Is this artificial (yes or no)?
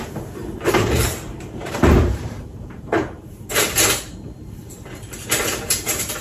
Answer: yes